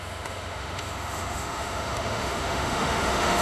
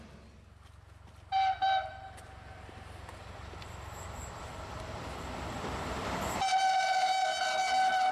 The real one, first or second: second